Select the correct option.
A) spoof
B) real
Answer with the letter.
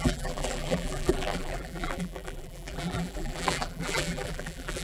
A